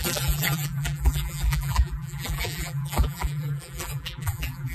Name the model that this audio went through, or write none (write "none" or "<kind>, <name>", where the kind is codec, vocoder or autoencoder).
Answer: vocoder, BigVGAN v2